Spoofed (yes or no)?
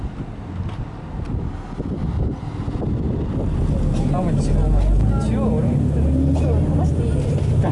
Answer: no